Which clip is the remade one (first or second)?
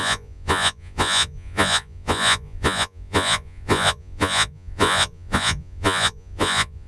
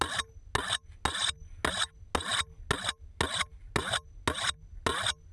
first